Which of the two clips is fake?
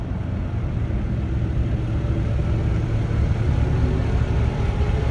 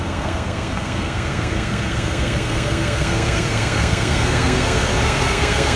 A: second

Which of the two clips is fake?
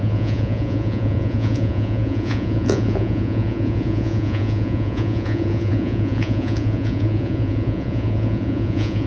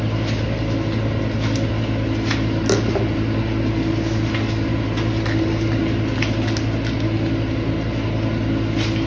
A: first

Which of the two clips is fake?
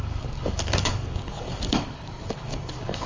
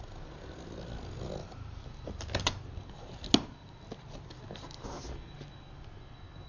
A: first